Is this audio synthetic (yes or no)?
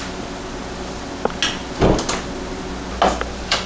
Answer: no